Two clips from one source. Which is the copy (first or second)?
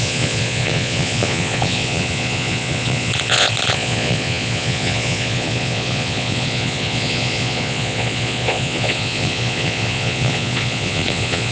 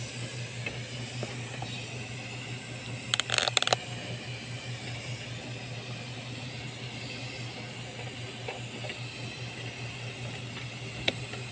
first